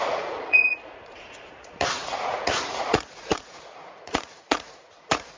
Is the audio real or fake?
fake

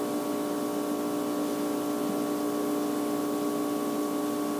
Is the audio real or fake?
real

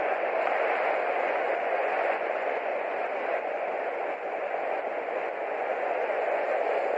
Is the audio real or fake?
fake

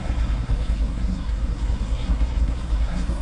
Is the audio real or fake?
fake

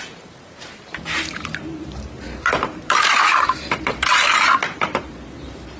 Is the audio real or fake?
fake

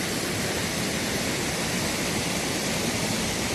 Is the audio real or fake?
real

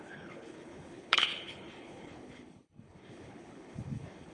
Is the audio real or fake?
fake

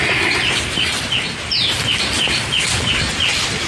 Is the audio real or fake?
real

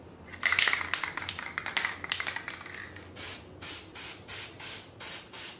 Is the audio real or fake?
real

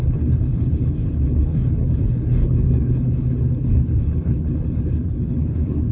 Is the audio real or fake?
fake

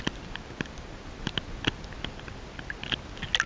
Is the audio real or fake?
real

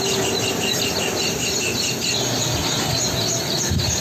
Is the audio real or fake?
real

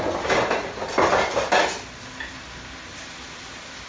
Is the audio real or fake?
real